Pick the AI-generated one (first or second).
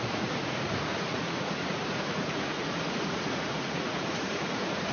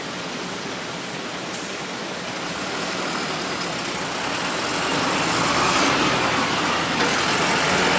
first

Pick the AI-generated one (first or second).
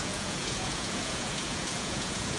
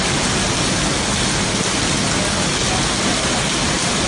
first